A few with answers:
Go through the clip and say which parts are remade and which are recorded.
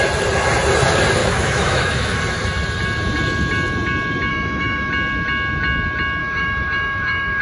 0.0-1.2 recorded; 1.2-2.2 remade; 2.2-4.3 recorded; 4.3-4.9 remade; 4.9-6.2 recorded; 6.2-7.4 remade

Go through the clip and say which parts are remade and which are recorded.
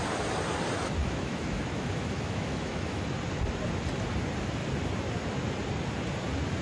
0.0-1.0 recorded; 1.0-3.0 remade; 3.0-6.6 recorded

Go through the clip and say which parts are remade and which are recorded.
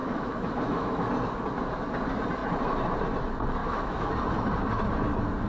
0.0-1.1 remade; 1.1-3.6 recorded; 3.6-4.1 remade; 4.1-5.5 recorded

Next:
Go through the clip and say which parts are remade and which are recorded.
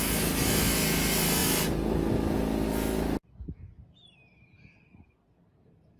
0.0-6.0 recorded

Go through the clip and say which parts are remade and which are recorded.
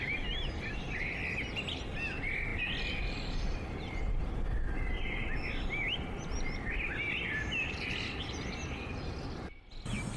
0.0-10.2 recorded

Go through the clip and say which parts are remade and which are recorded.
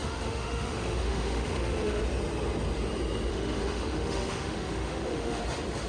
0.0-2.0 remade; 2.0-3.3 recorded; 3.3-5.4 remade; 5.4-5.9 recorded